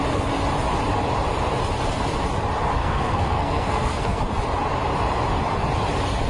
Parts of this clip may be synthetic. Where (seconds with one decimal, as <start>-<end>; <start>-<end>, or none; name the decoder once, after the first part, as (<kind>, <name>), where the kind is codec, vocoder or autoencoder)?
2.8-4.2 (codec, SNAC)